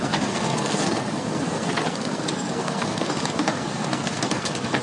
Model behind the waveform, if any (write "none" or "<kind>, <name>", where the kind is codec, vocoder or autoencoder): codec, SNAC